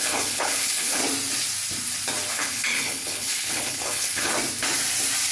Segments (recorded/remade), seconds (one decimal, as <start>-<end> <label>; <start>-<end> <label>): 0.0-1.0 remade; 1.0-2.3 recorded; 2.3-4.3 remade; 4.3-5.3 recorded